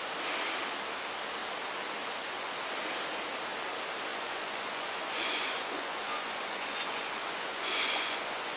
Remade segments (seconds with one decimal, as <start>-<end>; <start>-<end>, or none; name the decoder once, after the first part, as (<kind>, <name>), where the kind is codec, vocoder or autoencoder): 2.0-2.5 (vocoder, Vocos); 4.1-8.6